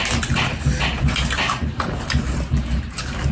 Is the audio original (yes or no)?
yes